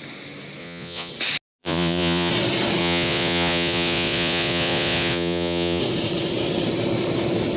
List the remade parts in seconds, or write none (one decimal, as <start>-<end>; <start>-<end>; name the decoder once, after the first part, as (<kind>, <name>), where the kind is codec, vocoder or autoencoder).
0.6-1.1 (vocoder, Vocos); 1.6-2.3; 2.8-5.8